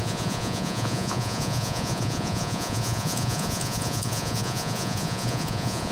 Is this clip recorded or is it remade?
remade